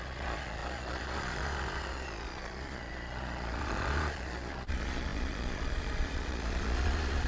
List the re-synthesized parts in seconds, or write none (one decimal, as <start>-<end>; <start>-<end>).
0.0-7.3